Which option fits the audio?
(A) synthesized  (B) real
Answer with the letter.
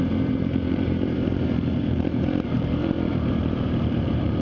A